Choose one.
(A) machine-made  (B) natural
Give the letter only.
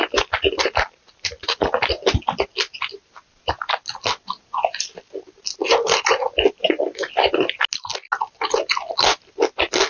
B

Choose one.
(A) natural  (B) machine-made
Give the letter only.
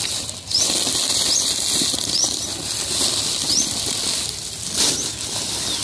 A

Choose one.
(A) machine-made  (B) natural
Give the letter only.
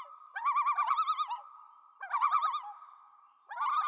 B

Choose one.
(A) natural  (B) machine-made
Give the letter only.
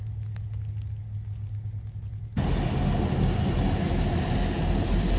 A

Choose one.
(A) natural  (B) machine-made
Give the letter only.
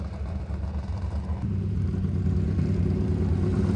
B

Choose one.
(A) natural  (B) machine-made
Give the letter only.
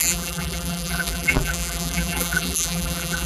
B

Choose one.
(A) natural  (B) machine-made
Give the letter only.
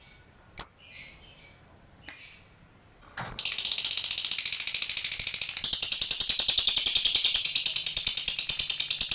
A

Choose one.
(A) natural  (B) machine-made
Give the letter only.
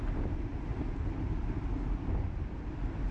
B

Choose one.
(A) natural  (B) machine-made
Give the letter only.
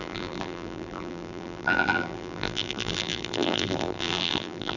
B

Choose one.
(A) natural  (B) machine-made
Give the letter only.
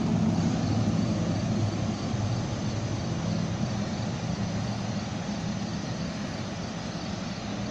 A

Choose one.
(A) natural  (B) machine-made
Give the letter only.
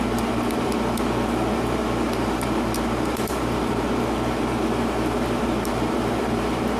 B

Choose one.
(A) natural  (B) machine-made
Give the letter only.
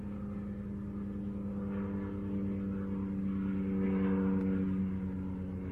A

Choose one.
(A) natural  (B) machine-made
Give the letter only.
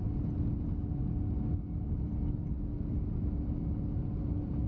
A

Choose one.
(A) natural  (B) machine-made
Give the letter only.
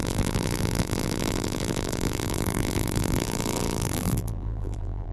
B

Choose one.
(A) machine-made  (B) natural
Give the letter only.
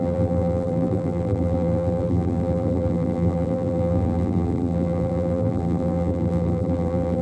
A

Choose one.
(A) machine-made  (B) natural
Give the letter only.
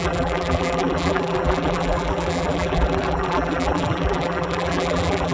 A